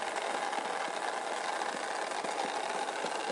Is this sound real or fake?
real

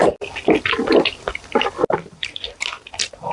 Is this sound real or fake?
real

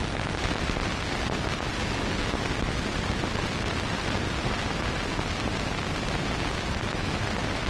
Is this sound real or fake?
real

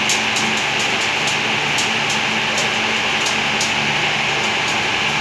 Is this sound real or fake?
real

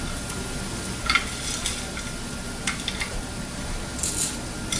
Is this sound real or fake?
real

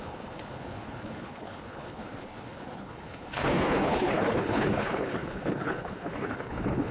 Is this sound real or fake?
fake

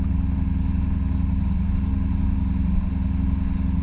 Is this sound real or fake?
real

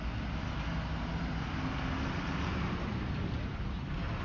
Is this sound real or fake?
real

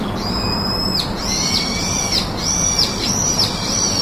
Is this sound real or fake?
real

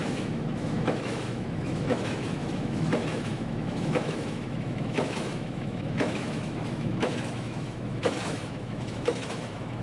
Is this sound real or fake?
fake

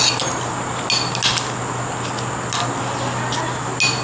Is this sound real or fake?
real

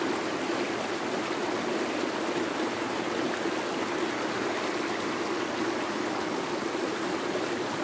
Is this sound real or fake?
real